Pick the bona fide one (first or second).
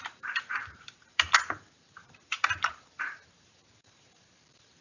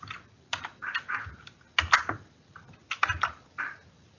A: second